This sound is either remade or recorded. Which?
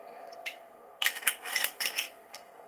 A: remade